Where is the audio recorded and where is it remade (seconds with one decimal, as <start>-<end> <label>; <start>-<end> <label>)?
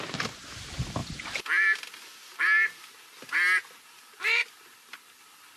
0.0-5.6 recorded